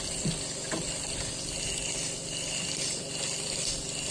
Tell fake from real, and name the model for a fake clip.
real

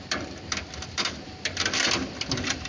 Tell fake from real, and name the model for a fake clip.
fake, vocoder, BigVGAN v2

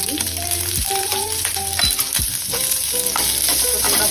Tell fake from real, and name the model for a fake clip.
fake, vocoder, BigVGAN v2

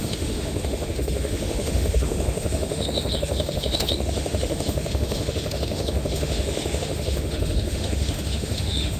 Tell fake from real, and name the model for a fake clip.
fake, autoencoder, DAC-VAE